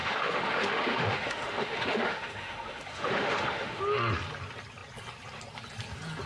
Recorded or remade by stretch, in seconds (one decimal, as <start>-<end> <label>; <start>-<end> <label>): 0.0-3.8 remade; 3.8-6.3 recorded